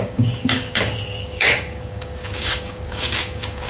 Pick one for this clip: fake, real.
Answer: fake